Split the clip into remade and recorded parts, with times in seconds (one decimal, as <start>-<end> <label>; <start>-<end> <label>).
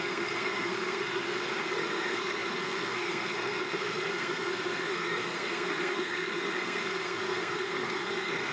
0.0-8.5 remade